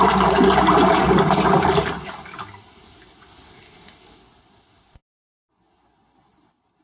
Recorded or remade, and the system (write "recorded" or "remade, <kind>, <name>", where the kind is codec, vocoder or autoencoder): recorded